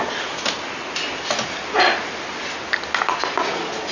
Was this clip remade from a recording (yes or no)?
no